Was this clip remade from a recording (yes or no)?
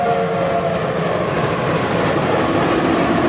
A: no